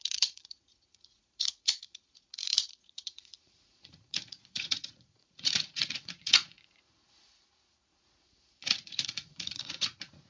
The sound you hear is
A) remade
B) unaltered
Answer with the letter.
A